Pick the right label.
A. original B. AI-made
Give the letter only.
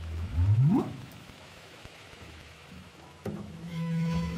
B